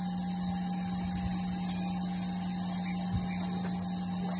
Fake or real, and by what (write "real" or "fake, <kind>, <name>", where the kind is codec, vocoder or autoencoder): real